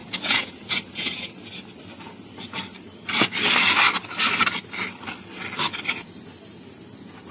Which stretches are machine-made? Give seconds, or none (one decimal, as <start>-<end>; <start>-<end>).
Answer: 0.0-1.3